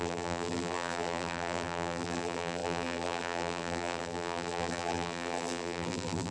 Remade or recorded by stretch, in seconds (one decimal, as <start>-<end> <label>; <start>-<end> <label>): 0.0-6.3 remade